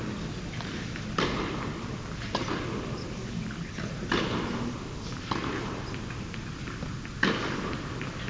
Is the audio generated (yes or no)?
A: no